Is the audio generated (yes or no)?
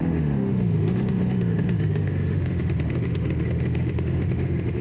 yes